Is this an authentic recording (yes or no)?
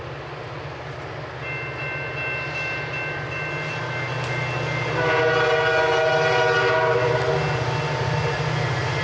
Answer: yes